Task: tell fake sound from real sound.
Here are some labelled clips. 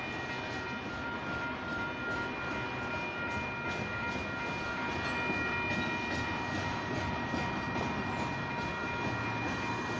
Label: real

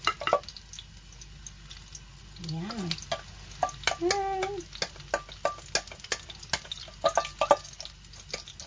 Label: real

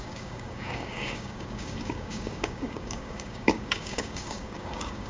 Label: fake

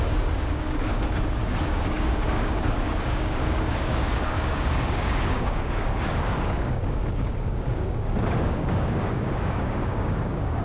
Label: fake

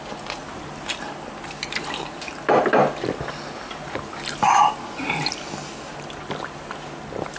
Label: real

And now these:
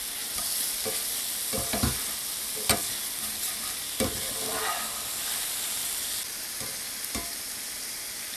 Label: real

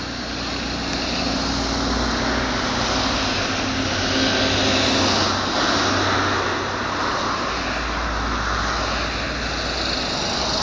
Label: real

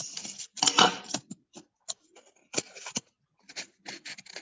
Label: real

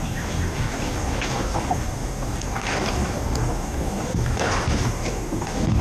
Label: fake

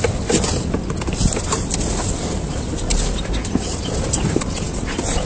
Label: real